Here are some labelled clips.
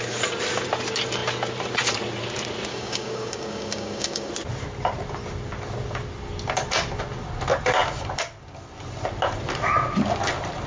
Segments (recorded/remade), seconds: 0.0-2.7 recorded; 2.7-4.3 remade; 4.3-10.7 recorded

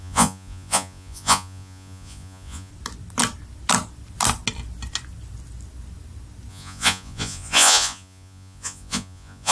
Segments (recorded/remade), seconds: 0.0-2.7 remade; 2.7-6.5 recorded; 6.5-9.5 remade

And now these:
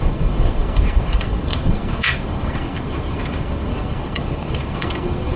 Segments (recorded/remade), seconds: 0.0-5.4 remade